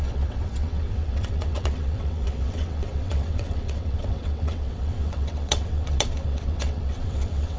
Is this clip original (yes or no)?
no